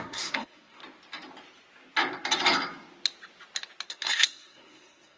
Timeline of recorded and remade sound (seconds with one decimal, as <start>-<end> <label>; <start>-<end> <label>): 0.0-0.8 remade; 0.8-3.9 recorded; 3.9-5.2 remade